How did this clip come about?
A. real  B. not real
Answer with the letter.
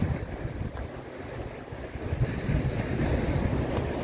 A